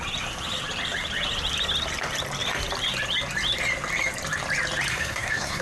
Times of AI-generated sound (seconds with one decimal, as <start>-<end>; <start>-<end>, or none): 4.9-5.6